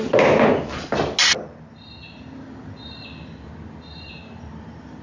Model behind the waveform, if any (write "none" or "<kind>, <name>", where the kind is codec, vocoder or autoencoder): none